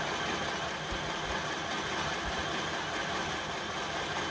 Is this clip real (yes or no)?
yes